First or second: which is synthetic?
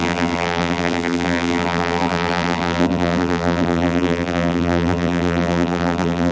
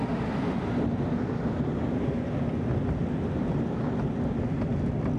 first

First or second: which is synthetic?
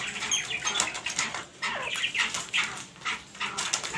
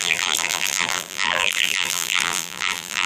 second